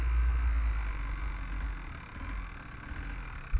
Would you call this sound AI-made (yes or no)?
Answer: no